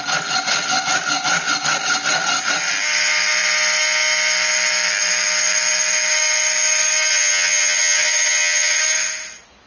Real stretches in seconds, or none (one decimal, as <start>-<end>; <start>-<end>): 0.0-7.1; 8.8-9.7